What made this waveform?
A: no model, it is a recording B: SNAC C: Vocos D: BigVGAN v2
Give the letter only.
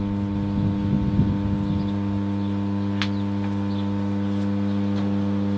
A